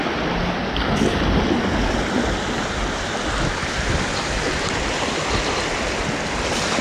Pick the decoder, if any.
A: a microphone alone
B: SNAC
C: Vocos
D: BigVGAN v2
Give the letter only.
A